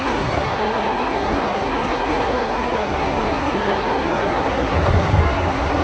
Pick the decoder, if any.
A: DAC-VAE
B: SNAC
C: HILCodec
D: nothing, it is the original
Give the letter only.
B